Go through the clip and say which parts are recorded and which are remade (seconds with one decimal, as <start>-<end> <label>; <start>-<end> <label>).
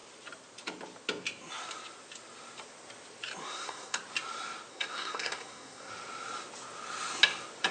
0.0-3.4 recorded; 3.4-4.0 remade; 4.0-4.7 recorded; 4.7-5.9 remade; 5.9-7.7 recorded